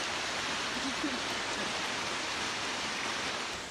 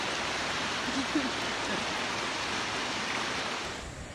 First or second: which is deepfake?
first